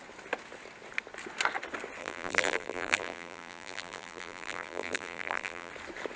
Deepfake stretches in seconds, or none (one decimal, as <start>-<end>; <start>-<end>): 2.0-5.7